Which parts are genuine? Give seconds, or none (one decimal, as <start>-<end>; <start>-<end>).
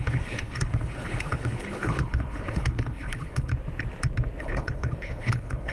3.5-4.4